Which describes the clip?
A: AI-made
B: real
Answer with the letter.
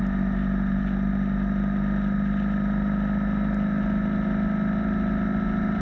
B